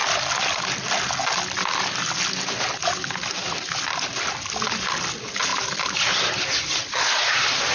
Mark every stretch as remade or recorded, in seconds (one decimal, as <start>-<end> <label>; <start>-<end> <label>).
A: 0.0-7.7 recorded